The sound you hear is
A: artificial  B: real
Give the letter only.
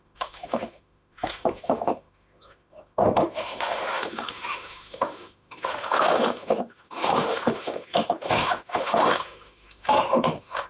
A